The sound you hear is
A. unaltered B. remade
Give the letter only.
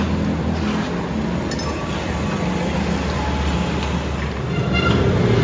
A